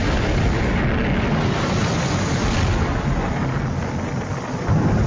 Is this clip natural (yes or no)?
yes